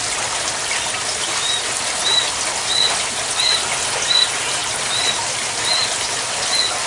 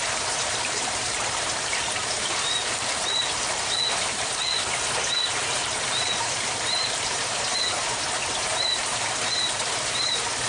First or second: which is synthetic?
second